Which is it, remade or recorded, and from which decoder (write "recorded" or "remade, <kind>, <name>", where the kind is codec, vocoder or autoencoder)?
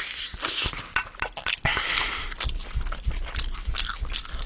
recorded